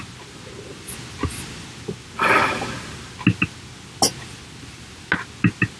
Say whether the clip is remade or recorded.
recorded